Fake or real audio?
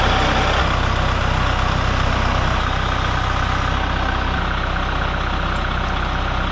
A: real